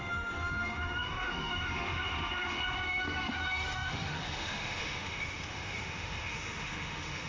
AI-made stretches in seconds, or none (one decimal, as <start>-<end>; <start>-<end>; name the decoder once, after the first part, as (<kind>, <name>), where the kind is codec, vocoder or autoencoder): 0.0-7.3 (autoencoder, DAC-VAE)